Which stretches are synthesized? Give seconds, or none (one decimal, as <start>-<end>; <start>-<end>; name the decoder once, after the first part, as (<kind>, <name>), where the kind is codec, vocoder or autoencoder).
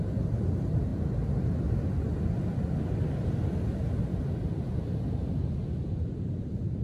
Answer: none